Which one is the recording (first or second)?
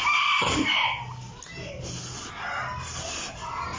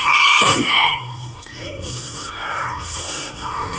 first